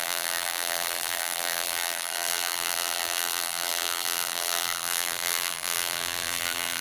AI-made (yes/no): yes